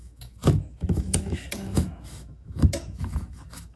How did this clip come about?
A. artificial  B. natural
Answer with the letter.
A